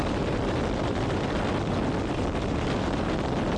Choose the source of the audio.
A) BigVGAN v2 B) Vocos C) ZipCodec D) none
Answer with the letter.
A